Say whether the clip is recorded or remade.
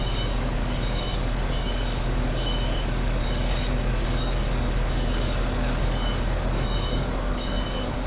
remade